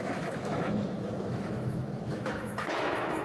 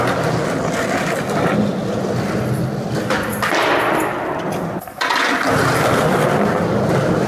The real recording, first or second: second